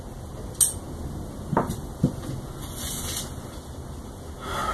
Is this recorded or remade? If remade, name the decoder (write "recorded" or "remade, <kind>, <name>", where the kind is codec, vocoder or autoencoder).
recorded